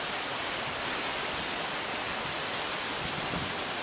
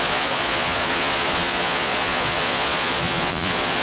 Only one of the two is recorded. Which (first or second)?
first